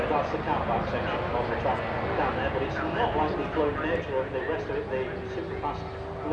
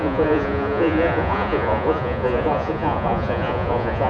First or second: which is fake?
second